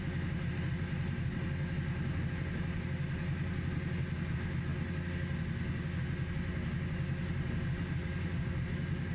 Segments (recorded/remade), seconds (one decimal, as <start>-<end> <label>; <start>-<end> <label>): 0.0-9.1 recorded